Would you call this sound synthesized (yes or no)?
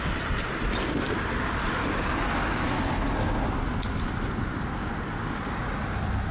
no